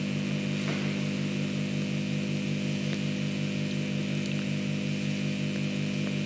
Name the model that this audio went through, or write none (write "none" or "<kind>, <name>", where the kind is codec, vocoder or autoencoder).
none